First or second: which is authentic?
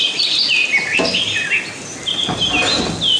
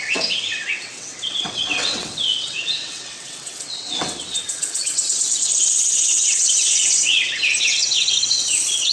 first